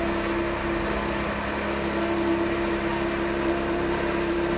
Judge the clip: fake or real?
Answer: real